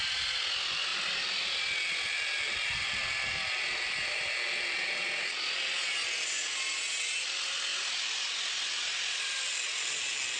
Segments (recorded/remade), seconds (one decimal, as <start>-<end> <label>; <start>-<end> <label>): 0.0-10.4 recorded